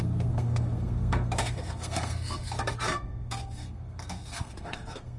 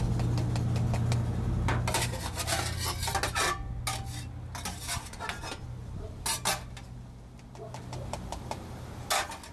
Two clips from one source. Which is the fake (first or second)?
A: first